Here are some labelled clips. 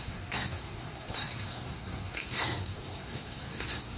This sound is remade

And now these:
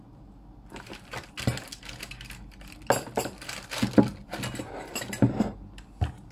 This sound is recorded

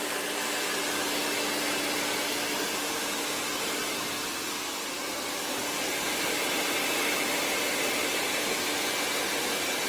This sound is recorded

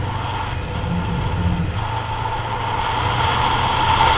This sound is recorded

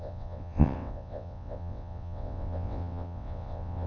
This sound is remade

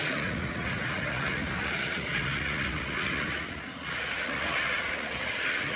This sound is remade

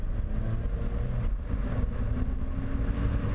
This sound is recorded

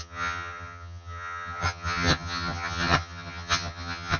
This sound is remade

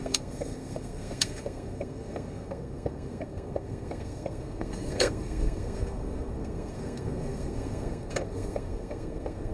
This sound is remade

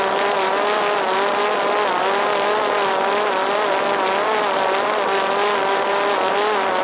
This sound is recorded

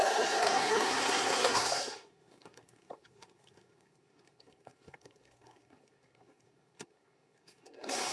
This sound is remade